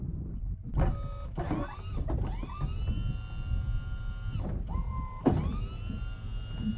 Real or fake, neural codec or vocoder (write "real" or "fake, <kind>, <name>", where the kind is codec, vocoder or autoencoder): real